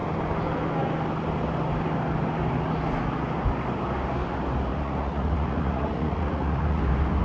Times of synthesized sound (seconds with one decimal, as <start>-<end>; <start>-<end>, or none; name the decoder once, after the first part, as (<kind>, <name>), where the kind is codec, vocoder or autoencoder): 4.7-6.8 (vocoder, Vocos)